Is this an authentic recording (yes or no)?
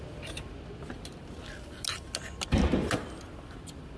yes